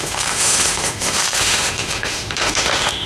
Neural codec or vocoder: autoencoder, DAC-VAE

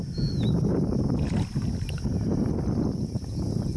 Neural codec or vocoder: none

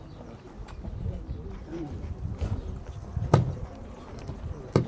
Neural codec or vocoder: none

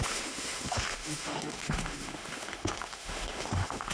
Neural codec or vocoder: autoencoder, DAC-VAE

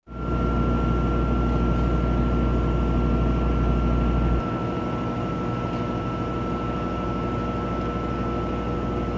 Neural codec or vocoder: none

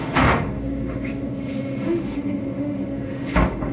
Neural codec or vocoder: autoencoder, DAC-VAE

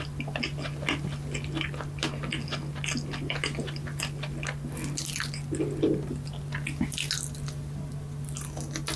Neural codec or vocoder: none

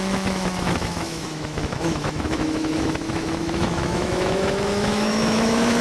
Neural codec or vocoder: autoencoder, DAC-VAE